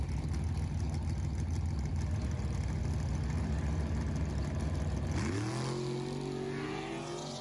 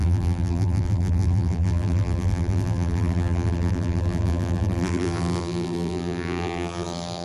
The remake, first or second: second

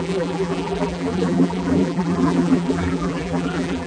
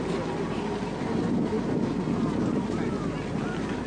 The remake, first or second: first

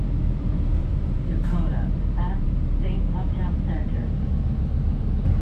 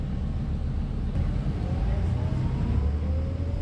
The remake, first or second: first